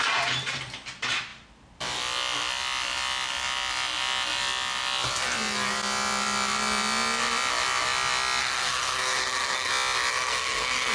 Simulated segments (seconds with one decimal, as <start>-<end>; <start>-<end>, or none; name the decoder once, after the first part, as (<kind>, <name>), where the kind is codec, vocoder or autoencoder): 8.4-9.7 (codec, SNAC); 10.1-10.9